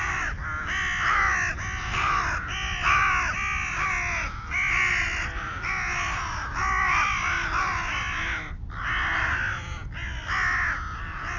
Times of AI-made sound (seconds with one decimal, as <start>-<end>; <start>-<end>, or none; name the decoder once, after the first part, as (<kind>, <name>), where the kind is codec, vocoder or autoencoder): none